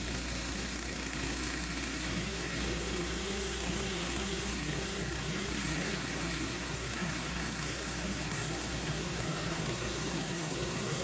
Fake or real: fake